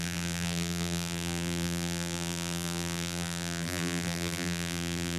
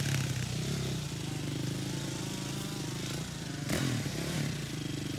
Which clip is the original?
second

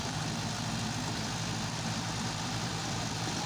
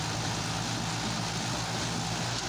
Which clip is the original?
second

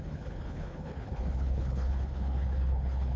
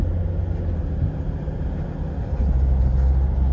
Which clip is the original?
second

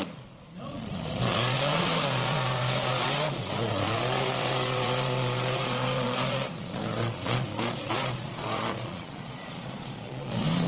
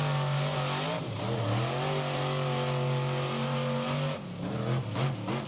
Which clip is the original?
second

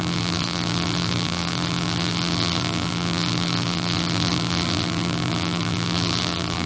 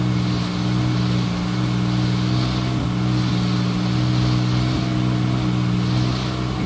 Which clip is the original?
second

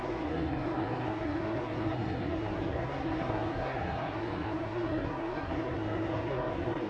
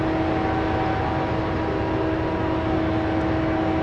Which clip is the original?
second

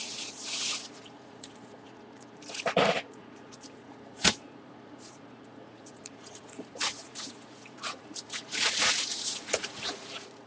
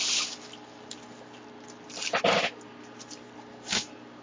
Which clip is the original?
second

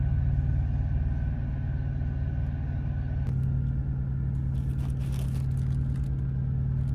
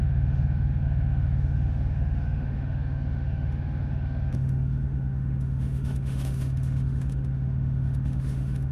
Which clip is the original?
first